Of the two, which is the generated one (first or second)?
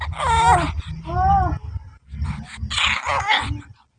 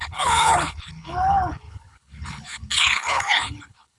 second